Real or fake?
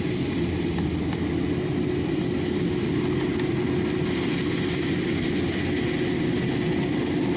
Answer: real